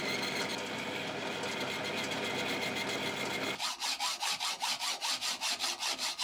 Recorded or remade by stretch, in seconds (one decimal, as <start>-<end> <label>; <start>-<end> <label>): 0.0-6.2 recorded